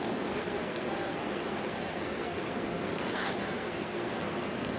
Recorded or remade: remade